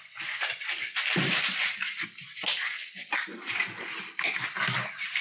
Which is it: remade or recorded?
recorded